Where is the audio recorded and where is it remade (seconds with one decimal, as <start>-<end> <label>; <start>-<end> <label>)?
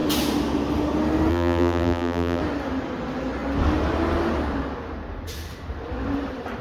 0.0-1.3 recorded; 1.3-2.4 remade; 2.4-6.6 recorded